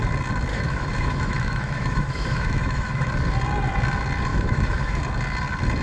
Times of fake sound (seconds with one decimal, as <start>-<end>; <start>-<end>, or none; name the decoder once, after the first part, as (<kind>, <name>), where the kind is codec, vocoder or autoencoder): 0.5-3.1 (autoencoder, DAC-VAE); 4.3-5.0